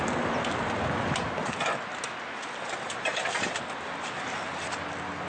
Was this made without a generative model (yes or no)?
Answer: yes